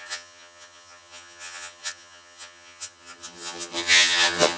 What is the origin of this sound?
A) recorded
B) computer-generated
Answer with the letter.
B